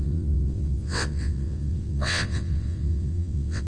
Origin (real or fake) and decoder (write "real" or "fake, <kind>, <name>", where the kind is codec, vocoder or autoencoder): fake, vocoder, WaveNeXt